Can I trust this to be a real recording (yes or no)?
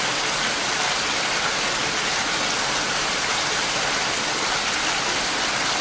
yes